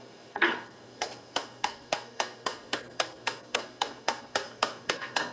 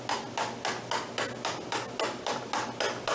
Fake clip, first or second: first